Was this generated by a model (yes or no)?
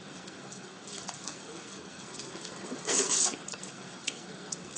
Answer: yes